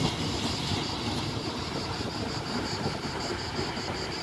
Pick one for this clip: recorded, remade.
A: remade